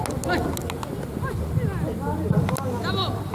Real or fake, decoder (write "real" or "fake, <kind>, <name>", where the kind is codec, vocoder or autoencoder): real